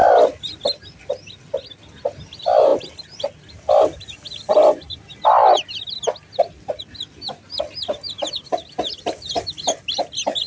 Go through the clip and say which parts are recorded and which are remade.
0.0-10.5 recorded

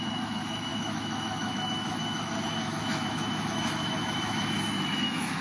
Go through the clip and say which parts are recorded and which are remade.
0.0-5.4 remade

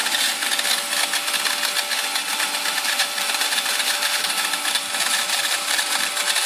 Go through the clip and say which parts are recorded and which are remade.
0.0-0.5 remade; 0.5-2.2 recorded; 2.2-6.1 remade; 6.1-6.5 recorded